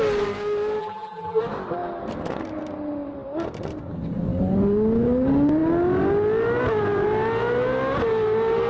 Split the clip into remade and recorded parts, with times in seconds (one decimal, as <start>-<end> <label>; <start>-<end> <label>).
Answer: 0.0-0.8 recorded; 0.8-1.4 remade; 1.4-8.7 recorded